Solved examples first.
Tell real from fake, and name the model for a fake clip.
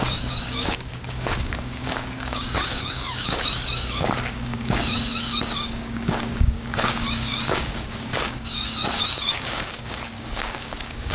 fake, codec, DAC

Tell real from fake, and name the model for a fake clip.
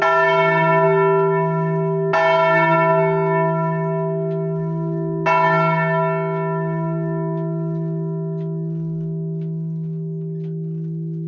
real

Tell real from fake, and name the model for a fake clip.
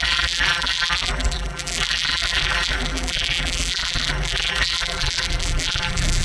fake, vocoder, BigVGAN v2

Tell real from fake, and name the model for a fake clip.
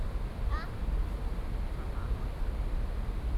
real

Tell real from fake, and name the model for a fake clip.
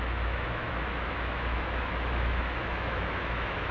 fake, autoencoder, DAC-VAE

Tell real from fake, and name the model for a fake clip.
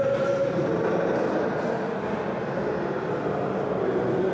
real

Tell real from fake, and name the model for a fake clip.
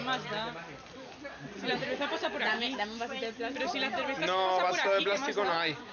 real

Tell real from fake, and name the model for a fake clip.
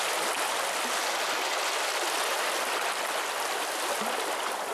real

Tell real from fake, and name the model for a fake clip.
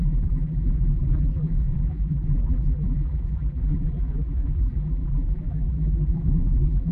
fake, vocoder, BigVGAN v2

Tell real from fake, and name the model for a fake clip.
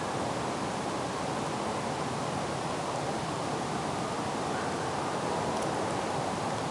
real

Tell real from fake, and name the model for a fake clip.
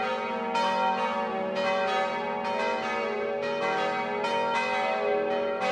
real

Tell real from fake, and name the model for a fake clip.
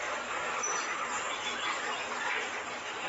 real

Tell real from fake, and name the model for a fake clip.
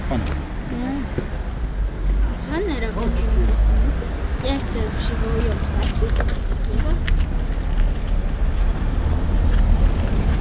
real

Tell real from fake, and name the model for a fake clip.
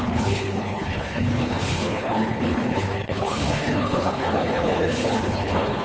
fake, codec, HILCodec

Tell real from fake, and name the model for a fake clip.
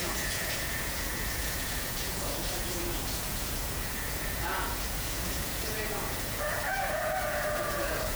fake, vocoder, Vocos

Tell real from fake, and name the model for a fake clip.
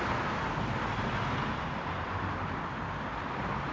real